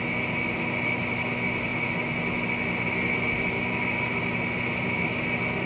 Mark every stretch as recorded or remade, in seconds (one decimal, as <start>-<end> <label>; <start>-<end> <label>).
0.0-5.7 recorded